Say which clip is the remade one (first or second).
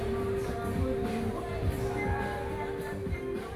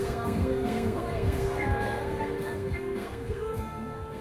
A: second